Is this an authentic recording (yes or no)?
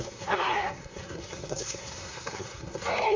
no